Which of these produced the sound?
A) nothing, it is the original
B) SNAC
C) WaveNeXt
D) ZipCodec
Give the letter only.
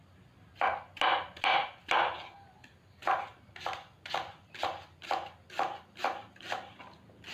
A